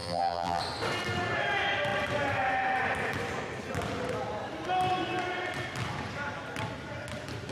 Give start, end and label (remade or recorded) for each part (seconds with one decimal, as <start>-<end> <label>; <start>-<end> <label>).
0.0-0.6 remade; 0.6-7.5 recorded